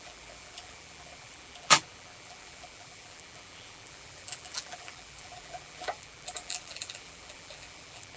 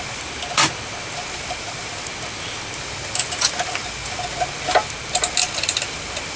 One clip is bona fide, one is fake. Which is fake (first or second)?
first